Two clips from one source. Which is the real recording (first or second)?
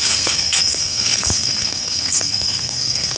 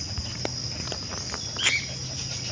second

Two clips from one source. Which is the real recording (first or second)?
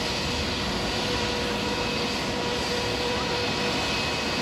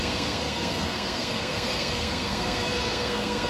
first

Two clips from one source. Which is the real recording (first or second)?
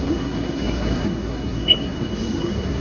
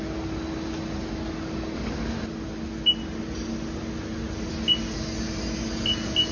second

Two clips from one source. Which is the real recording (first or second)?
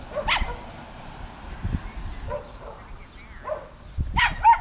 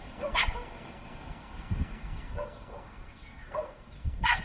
first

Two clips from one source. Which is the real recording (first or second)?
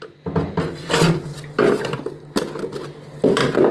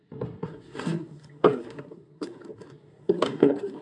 first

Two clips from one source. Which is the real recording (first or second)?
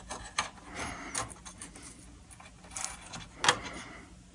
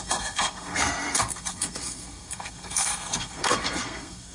first